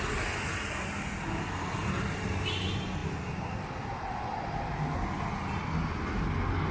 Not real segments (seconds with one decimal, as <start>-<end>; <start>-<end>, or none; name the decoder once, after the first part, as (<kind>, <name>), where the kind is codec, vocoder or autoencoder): none